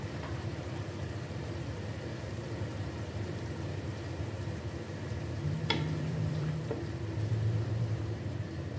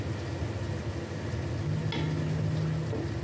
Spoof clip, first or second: first